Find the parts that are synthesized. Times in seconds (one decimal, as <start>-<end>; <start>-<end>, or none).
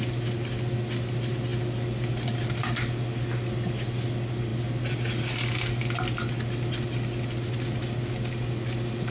none